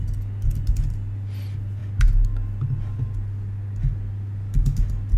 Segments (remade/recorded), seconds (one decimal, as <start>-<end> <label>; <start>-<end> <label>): 0.0-5.2 recorded